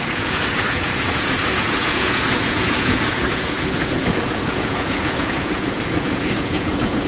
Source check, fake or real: fake